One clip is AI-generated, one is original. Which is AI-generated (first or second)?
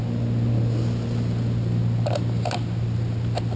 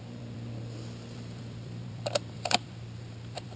second